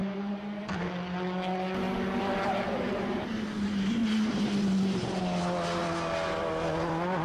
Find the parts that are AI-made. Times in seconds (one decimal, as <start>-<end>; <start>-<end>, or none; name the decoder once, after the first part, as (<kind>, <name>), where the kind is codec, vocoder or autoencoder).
0.0-0.6 (vocoder, BigVGAN v2); 4.0-5.2